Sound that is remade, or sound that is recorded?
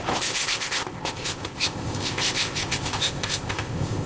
remade